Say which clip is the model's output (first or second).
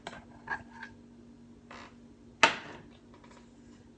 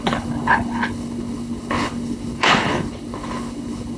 second